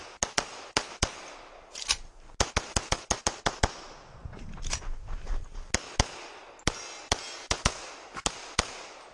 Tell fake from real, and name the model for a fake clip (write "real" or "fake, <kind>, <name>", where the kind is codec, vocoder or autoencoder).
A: real